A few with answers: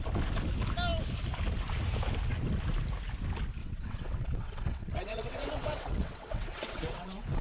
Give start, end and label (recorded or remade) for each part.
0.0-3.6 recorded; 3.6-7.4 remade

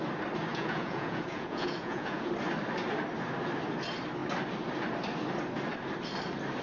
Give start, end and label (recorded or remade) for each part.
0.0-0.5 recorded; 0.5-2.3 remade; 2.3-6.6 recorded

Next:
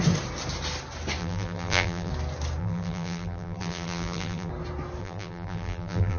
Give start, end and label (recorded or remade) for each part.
0.0-1.2 recorded; 1.2-2.1 remade; 2.1-2.6 recorded; 2.6-4.5 remade; 4.5-5.0 recorded; 5.0-6.2 remade